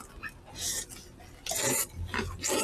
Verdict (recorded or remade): recorded